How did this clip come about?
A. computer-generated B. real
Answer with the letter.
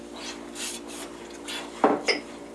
B